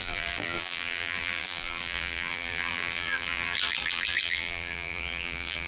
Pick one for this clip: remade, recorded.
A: remade